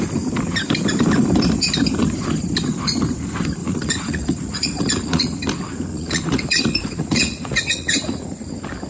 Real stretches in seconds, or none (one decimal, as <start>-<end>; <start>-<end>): 0.0-3.6; 5.4-5.9; 8.5-8.9